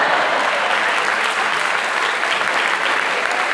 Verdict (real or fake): real